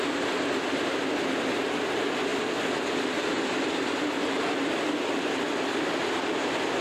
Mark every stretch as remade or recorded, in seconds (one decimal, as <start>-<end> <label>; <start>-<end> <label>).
0.0-6.8 recorded